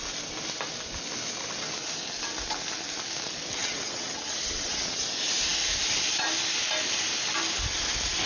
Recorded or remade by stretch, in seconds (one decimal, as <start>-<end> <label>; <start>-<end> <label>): 0.0-3.6 recorded; 3.6-5.0 remade; 5.0-8.3 recorded